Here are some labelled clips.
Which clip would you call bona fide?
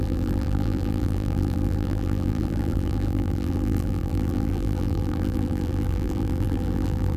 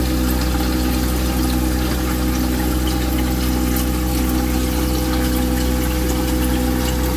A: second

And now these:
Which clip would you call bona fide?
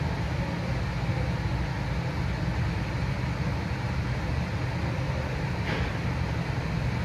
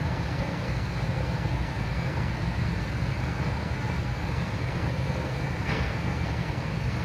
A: first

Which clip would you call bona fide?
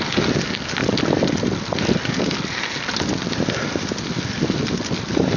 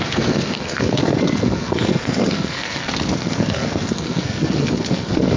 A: first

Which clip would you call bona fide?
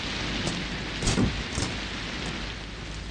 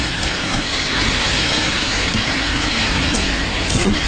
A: first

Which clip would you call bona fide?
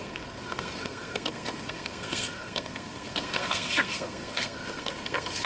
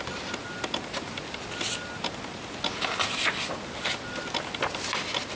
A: second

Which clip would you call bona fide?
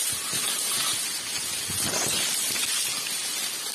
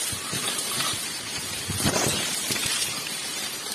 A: first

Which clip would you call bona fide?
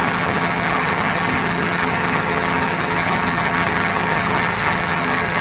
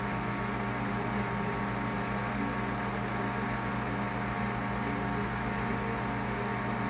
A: second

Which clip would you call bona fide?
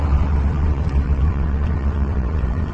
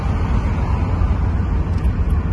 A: second